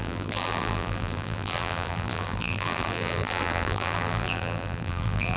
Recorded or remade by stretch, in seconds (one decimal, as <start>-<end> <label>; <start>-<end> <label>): 0.0-5.4 remade